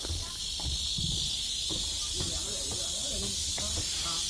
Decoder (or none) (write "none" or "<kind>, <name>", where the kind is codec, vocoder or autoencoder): none